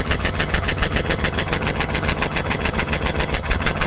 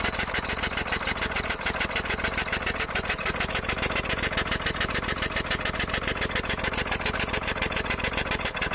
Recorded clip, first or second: second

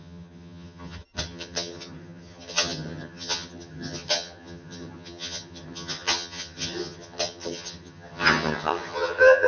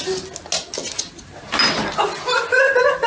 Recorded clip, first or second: second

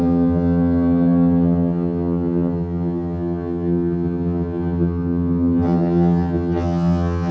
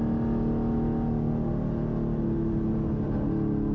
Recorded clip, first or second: second